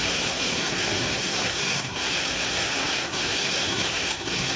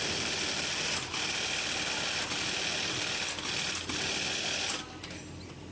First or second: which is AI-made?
first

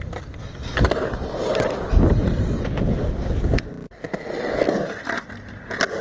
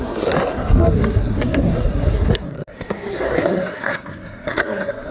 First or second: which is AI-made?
second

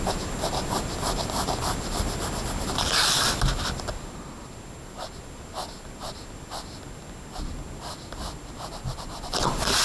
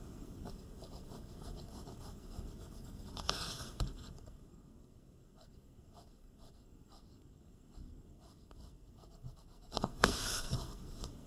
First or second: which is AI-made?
second